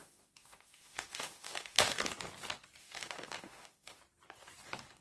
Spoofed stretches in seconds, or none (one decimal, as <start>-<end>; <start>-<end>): 0.0-2.0; 2.8-4.0